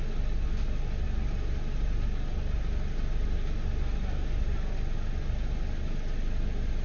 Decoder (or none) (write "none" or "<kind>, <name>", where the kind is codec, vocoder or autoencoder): none